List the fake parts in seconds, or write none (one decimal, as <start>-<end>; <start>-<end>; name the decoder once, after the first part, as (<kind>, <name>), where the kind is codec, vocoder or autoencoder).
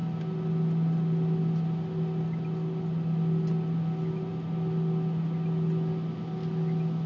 none